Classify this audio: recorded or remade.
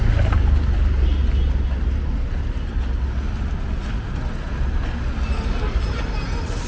recorded